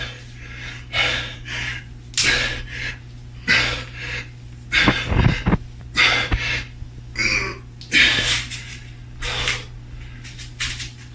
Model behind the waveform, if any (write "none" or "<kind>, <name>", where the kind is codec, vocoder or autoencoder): none